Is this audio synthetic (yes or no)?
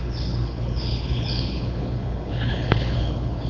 yes